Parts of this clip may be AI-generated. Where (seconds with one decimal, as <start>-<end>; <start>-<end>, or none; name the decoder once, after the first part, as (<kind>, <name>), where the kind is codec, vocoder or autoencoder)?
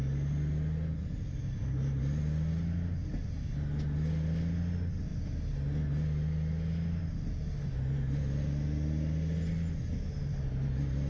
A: none